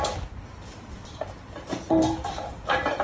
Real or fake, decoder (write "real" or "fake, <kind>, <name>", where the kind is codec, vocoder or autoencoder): real